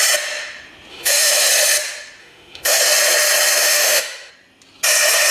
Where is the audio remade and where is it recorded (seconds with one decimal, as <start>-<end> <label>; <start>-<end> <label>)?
0.0-0.9 recorded; 0.9-1.5 remade; 1.5-2.2 recorded; 2.2-2.8 remade; 2.8-3.6 recorded; 3.6-4.3 remade; 4.3-5.3 recorded